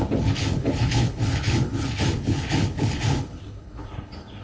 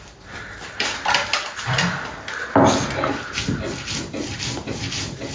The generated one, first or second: first